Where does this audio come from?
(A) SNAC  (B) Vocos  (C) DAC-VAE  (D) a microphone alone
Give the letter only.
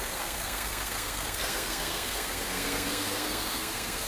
A